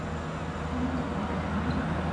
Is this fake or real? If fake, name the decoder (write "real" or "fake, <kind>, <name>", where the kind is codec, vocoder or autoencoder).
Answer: real